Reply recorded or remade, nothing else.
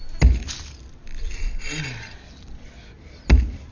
recorded